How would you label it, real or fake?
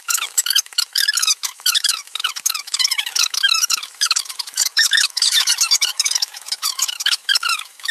fake